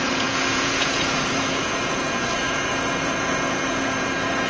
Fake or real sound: fake